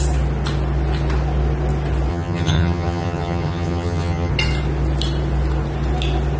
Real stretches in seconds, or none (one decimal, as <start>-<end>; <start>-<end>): 0.0-2.1; 4.3-6.4